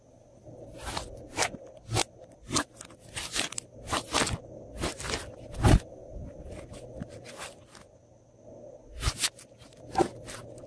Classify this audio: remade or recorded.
recorded